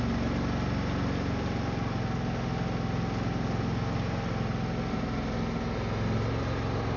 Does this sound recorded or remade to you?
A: recorded